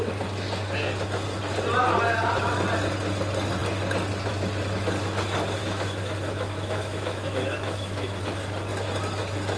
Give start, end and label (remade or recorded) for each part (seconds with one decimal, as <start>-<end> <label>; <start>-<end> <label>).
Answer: 0.0-5.6 recorded; 5.6-8.2 remade; 8.2-9.6 recorded